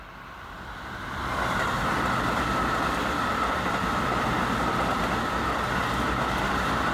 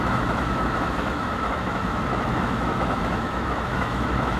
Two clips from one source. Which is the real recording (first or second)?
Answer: first